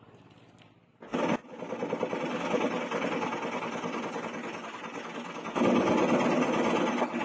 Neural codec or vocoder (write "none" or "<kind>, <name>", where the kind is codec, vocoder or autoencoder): none